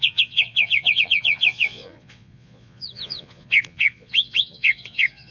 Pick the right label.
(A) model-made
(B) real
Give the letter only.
A